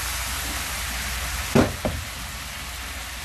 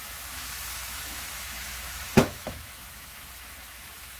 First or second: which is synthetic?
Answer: second